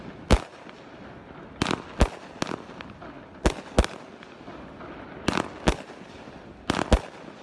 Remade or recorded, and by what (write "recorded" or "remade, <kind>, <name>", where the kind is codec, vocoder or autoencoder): recorded